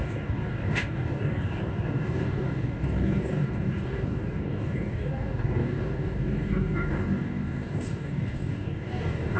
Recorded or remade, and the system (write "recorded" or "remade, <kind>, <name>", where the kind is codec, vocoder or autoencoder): remade, codec, DAC